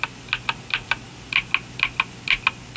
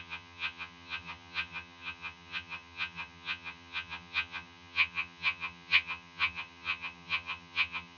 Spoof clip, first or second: second